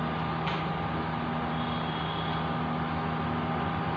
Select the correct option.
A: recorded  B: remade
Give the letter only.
A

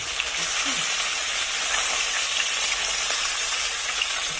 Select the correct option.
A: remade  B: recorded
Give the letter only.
B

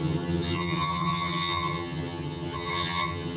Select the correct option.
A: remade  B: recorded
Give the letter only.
A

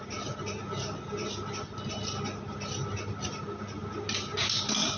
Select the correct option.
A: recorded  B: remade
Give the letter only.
A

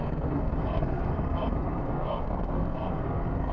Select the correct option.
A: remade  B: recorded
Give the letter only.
A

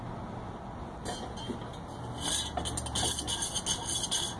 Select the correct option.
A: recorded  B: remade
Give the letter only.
A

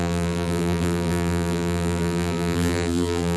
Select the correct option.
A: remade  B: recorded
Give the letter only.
A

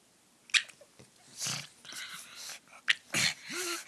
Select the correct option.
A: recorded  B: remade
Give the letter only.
A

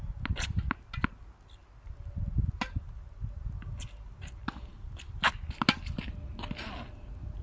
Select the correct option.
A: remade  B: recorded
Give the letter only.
B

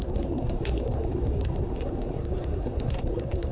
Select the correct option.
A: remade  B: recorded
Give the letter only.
A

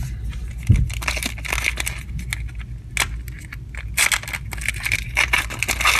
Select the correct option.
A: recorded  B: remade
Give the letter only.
A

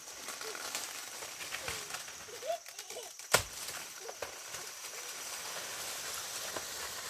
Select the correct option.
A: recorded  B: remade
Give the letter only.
A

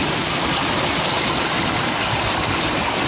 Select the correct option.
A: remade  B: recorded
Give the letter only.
B